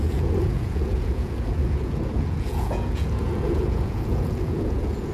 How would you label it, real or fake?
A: fake